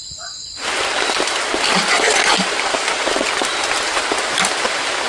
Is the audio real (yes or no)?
yes